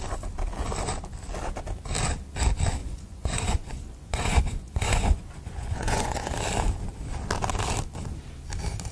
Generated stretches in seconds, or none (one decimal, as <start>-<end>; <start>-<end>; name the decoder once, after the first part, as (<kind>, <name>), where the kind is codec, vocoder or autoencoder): 2.8-6.3 (vocoder, Vocos)